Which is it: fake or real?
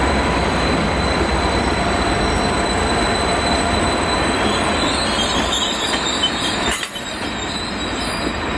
fake